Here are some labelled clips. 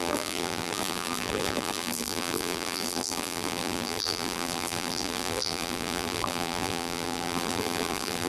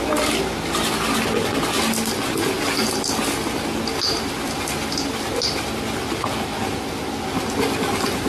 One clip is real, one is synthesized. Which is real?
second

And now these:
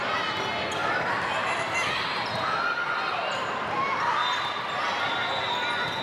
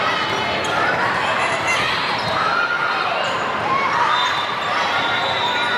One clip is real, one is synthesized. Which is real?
first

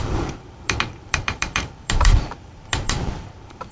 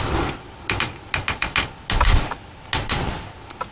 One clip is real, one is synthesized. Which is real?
second